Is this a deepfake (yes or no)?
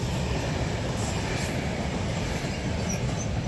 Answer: no